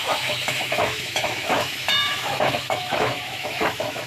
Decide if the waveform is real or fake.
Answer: fake